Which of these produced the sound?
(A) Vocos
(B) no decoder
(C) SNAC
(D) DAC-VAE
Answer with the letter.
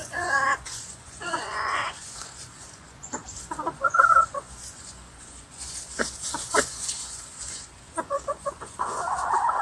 A